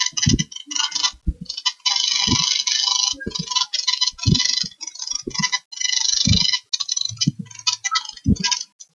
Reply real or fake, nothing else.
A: real